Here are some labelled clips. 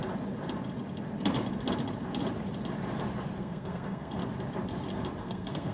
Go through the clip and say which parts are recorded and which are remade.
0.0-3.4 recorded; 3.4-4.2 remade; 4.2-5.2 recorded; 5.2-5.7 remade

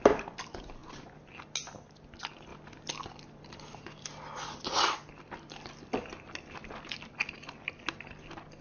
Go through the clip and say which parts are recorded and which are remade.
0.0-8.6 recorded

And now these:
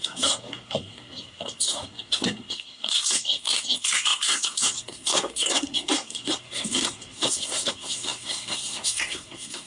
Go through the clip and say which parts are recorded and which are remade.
0.0-9.7 remade